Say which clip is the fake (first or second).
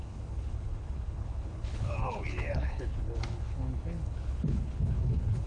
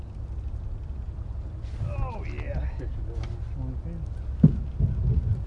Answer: first